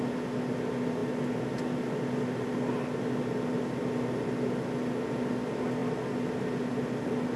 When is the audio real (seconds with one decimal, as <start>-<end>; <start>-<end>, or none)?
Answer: 0.0-7.4